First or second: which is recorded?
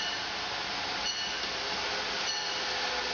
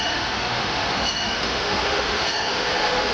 first